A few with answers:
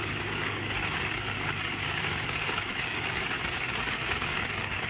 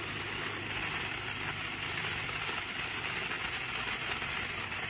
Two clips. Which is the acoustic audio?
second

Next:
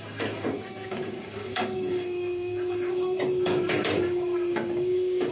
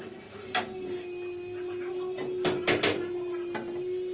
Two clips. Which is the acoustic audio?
second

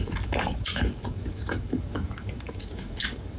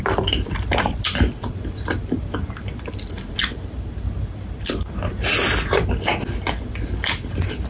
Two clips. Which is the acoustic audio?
second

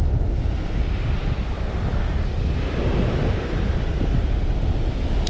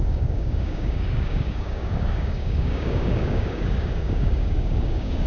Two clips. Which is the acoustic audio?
first